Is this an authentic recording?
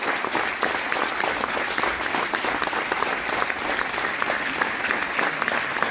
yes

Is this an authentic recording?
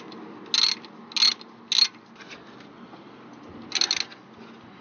yes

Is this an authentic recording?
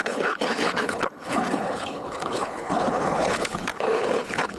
no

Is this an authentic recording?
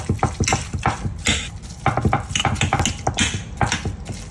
yes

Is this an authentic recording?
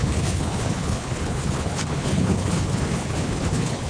no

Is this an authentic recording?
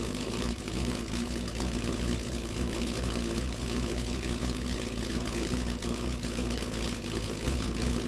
no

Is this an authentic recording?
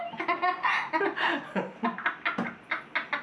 yes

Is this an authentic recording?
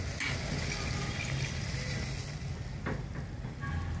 yes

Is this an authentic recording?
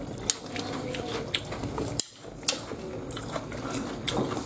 yes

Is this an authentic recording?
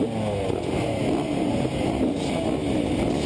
yes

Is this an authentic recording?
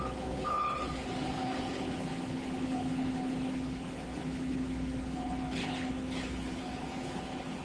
no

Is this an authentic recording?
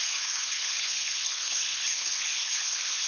no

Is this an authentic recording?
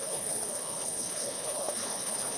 no